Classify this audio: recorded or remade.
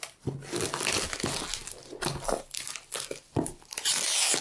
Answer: recorded